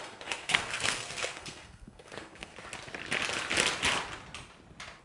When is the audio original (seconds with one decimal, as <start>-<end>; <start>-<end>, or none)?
2.5-5.0